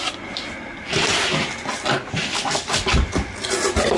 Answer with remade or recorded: remade